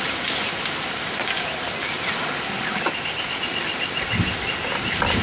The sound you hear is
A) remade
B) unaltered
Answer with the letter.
B